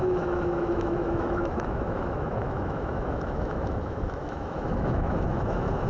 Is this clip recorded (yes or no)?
no